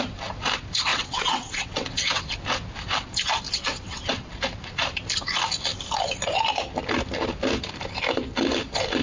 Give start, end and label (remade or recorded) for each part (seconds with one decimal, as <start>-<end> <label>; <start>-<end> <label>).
0.0-0.9 recorded; 0.9-2.2 remade; 2.2-3.7 recorded; 3.7-4.3 remade; 4.3-9.0 recorded